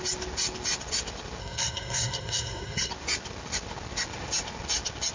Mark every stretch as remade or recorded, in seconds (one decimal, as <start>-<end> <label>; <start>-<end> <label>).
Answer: 0.0-1.4 recorded; 1.4-2.9 remade; 2.9-5.1 recorded